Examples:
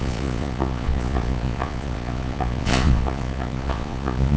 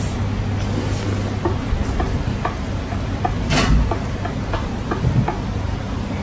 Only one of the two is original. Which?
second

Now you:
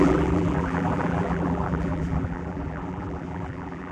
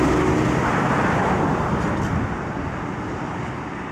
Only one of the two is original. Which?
second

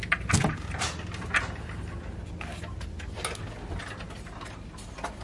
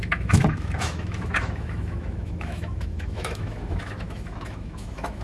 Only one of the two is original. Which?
first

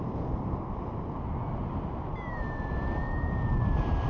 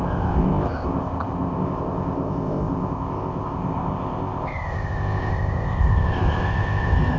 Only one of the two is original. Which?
first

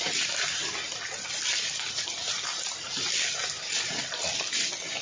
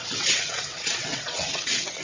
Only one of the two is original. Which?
first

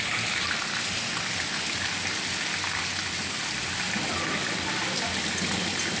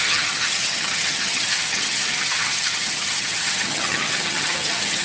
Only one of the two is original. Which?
first